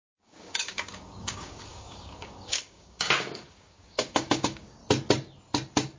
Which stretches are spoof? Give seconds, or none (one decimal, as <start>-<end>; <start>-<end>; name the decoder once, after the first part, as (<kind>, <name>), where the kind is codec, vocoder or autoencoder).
0.0-4.8 (codec, DAC)